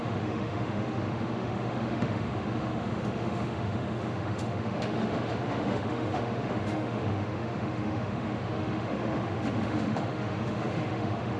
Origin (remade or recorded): remade